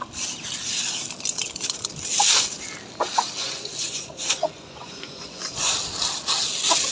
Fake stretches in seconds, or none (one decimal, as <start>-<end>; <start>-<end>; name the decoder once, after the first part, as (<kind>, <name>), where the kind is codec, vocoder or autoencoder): 3.4-5.7 (vocoder, Vocos)